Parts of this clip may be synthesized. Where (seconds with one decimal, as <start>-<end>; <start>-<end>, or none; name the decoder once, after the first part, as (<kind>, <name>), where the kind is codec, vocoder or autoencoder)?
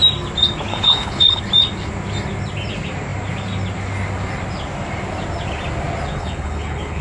0.7-1.4 (codec, HILCodec); 6.1-7.0